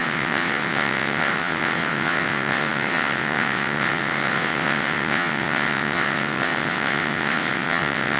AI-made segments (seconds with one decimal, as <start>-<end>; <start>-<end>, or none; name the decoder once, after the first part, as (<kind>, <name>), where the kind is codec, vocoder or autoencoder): 0.0-8.2 (vocoder, WaveNeXt)